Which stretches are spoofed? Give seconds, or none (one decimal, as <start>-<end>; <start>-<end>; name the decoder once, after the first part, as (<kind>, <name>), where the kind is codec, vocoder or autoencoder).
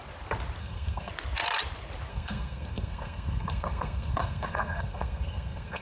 0.6-1.1 (codec, SNAC); 2.1-5.8